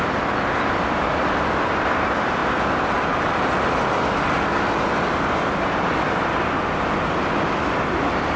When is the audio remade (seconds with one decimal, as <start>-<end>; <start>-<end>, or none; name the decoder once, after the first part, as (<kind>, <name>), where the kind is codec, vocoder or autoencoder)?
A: none